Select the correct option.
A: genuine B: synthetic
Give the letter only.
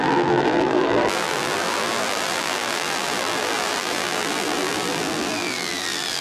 B